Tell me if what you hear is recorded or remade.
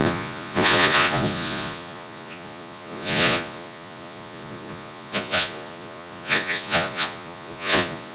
remade